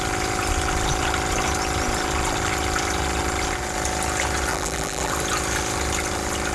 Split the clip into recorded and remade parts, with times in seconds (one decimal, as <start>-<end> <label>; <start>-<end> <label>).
0.0-4.5 recorded; 4.5-5.1 remade; 5.1-6.5 recorded